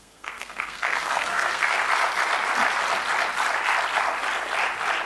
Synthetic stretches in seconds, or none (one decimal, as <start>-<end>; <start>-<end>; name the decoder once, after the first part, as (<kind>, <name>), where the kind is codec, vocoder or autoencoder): 0.0-1.8 (codec, SNAC)